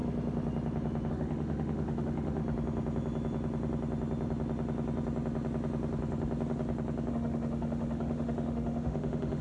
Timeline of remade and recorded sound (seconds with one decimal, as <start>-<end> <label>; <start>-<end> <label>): 0.0-1.1 recorded; 1.1-2.4 remade; 2.4-7.1 recorded; 7.1-9.4 remade

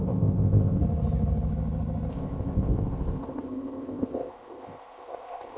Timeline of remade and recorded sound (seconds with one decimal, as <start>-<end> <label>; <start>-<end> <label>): 0.0-0.8 remade; 0.8-2.1 recorded; 2.1-5.6 remade

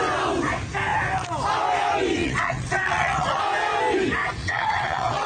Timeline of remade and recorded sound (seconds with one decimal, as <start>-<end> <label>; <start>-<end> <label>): 0.0-2.2 recorded; 2.2-3.4 remade; 3.4-4.4 recorded; 4.4-5.3 remade

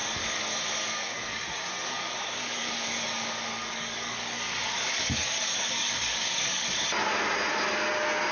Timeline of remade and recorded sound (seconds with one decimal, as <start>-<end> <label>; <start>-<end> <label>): 0.0-1.4 remade; 1.4-1.8 recorded; 1.8-6.8 remade; 6.8-8.3 recorded

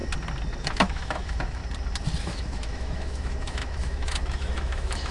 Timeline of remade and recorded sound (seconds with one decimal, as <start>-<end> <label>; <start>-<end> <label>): 0.0-0.6 recorded; 0.6-1.6 remade; 1.6-2.2 recorded; 2.2-5.1 remade

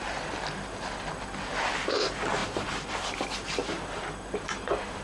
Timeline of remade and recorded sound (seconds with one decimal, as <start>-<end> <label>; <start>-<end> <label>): 0.0-5.0 recorded

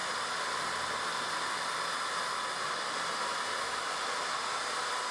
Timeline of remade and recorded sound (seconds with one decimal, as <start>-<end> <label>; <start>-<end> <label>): 0.0-5.1 recorded